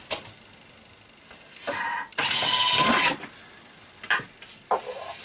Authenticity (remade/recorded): recorded